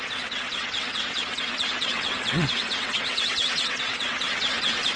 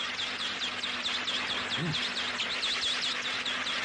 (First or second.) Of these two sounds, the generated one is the first